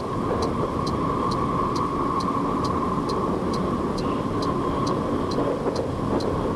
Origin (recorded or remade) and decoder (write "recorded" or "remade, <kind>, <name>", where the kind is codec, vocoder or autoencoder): recorded